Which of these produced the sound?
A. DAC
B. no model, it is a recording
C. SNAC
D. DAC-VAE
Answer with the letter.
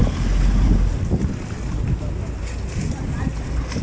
B